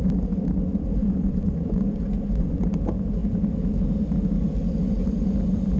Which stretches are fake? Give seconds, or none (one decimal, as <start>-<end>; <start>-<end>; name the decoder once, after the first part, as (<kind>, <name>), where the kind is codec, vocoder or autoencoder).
1.0-2.6 (vocoder, Vocos)